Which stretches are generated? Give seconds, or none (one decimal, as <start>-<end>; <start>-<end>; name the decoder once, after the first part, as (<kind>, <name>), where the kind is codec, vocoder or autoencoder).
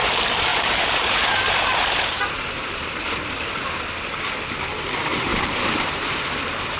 0.5-3.6 (vocoder, BigVGAN v2); 5.3-6.3